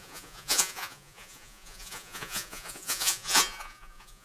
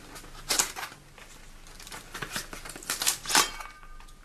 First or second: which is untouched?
second